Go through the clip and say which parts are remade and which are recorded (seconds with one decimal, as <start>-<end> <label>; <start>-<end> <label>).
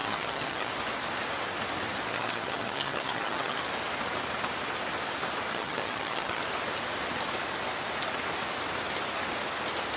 0.0-0.7 remade; 0.7-2.1 recorded; 2.1-3.6 remade; 3.6-5.5 recorded; 5.5-6.4 remade; 6.4-10.0 recorded